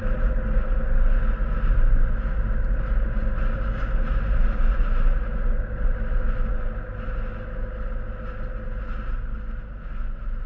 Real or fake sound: real